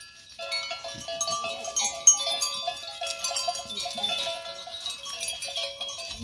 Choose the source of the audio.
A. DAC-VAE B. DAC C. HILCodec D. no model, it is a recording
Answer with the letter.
D